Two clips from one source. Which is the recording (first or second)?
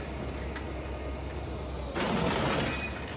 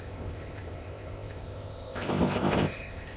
first